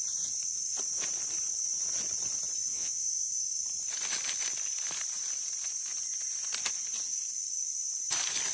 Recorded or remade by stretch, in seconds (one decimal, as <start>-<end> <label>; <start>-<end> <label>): 0.0-2.7 recorded; 2.7-3.3 remade; 3.3-8.5 recorded